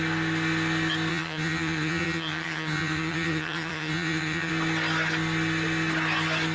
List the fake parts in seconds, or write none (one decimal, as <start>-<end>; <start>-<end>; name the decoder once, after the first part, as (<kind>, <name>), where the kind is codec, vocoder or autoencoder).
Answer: 1.1-4.5 (vocoder, HiFi-GAN)